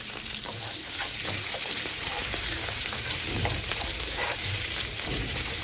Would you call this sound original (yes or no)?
no